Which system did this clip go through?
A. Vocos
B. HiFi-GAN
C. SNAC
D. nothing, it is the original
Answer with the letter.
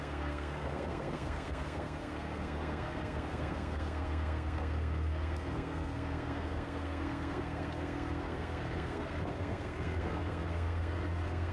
C